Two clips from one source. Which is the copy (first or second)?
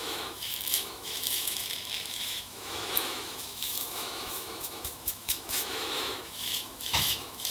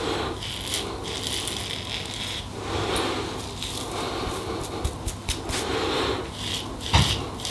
first